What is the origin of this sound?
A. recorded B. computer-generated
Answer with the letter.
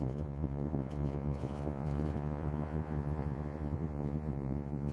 B